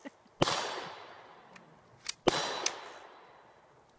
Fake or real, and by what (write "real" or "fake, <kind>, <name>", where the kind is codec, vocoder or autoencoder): real